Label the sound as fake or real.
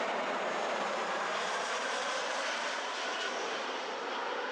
fake